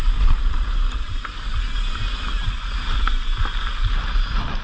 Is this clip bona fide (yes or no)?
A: yes